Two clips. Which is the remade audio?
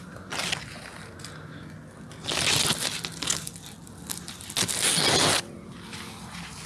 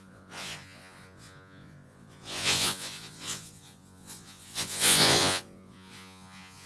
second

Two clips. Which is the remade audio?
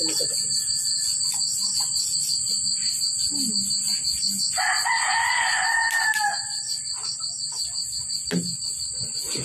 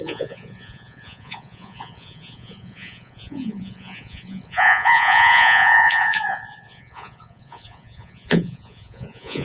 second